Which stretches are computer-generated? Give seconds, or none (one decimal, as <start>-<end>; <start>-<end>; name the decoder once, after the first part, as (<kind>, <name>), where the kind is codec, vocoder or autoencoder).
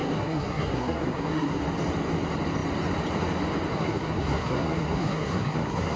0.0-1.6 (codec, SNAC); 3.7-6.0